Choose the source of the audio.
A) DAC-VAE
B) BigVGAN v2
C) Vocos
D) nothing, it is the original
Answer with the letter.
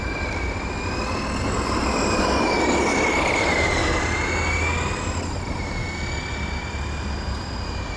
D